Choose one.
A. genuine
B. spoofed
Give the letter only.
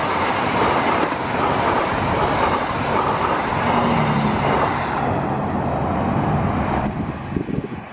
A